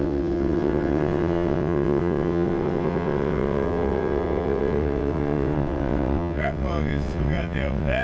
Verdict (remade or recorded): remade